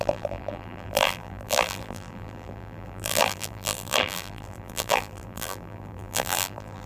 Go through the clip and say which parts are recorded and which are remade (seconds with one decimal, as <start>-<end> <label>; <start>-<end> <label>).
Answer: 0.0-6.9 remade